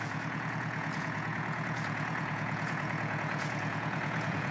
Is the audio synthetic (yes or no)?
yes